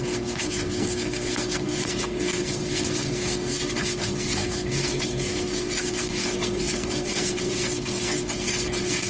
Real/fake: fake